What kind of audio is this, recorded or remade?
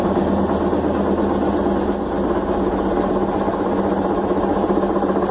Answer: recorded